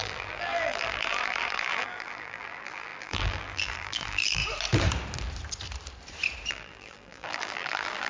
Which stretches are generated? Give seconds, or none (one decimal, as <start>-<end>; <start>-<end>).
0.0-4.4; 6.5-8.1